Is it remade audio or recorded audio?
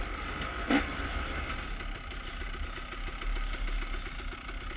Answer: recorded